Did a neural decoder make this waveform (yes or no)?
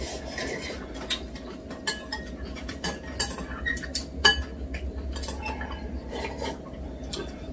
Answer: no